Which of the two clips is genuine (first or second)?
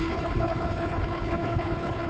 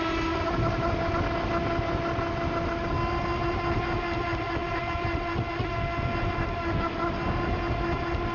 second